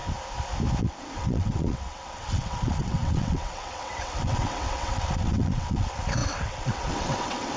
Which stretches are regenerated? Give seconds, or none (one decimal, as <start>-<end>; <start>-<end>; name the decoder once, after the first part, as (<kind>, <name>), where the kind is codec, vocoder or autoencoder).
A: 0.8-7.6 (vocoder, WaveNeXt)